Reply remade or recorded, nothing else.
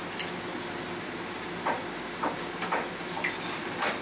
recorded